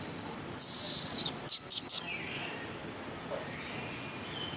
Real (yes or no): yes